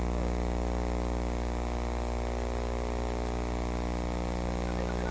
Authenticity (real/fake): real